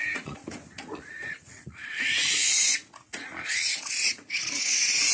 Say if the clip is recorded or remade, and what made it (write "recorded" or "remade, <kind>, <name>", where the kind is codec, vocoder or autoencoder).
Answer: remade, vocoder, Vocos